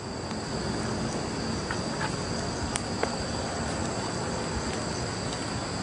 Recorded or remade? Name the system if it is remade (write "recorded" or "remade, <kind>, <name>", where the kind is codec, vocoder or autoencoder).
recorded